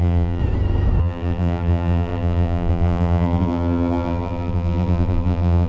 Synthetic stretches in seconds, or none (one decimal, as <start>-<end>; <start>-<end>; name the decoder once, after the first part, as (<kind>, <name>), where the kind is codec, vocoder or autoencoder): 0.0-0.4 (vocoder, BigVGAN v2); 1.0-5.7